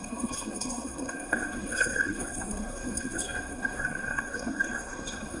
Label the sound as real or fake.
fake